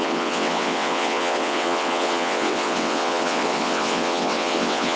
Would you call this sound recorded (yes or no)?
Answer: no